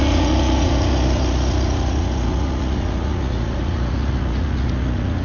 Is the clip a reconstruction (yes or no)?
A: yes